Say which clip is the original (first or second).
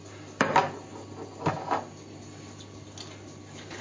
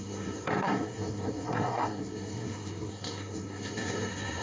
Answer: first